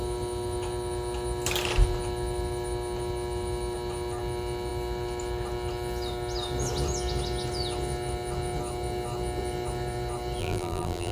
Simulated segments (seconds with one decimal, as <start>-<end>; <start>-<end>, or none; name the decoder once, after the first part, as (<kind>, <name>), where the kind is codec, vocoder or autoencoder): 10.4-11.1 (vocoder, BigVGAN v2)